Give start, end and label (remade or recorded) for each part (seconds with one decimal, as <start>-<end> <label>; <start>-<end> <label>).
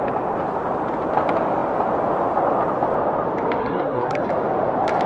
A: 0.0-3.6 recorded; 3.6-4.3 remade; 4.3-5.1 recorded